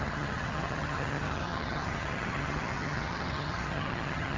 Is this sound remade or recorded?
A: remade